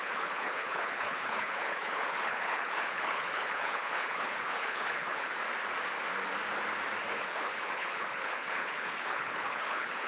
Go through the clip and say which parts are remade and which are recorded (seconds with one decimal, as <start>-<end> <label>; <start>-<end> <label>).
0.0-5.4 remade; 5.4-7.1 recorded; 7.1-10.1 remade